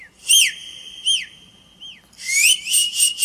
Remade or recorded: recorded